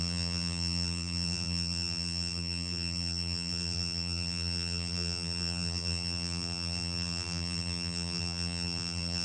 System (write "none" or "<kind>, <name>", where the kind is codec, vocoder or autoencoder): vocoder, BigVGAN v2